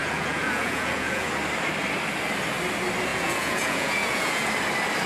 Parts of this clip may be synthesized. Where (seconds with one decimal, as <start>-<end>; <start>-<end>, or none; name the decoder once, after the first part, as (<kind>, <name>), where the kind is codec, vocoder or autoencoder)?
0.0-1.3 (vocoder, Vocos); 3.1-4.5